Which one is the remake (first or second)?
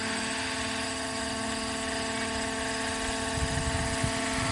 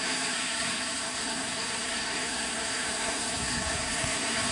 second